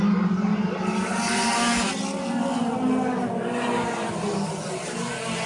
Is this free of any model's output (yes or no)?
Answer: yes